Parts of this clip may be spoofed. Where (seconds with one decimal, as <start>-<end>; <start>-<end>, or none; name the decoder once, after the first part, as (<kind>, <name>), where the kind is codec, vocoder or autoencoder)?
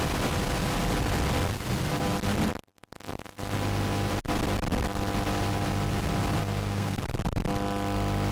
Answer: 6.4-7.0 (codec, SNAC)